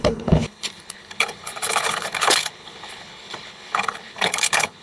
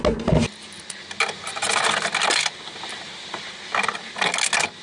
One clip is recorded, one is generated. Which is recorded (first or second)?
second